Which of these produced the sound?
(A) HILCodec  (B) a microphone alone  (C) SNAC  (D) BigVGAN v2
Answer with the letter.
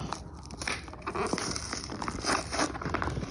D